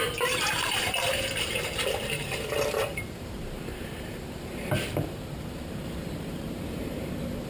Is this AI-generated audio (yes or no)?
yes